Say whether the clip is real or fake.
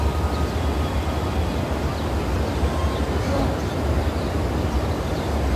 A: real